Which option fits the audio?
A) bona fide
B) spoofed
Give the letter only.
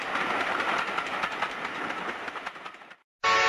A